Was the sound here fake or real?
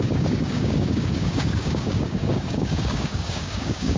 fake